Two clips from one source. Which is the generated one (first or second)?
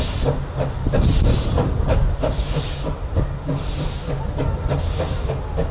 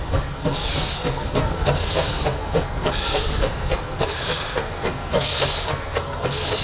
second